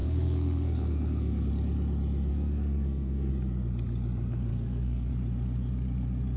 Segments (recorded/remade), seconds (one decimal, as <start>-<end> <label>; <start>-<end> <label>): 0.0-1.5 remade; 1.5-2.3 recorded; 2.3-3.3 remade; 3.3-4.5 recorded; 4.5-5.1 remade; 5.1-6.4 recorded